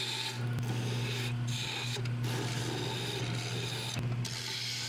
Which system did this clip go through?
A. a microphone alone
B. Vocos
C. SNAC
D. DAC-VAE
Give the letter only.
A